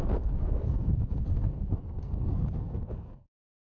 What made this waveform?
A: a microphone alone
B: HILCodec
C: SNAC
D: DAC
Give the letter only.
C